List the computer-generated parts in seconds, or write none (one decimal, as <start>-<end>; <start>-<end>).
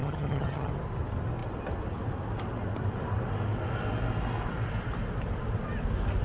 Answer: 0.0-0.7